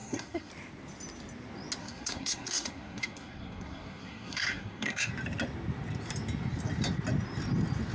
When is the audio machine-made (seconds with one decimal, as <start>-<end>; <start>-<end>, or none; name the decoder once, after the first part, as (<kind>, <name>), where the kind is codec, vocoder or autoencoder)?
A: 0.0-0.5 (codec, SNAC); 1.8-5.1